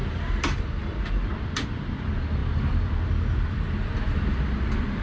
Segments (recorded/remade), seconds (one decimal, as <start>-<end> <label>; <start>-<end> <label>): 0.0-5.0 remade